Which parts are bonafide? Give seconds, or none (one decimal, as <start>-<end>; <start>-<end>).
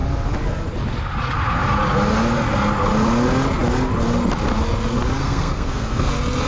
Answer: 0.0-5.2; 6.1-6.5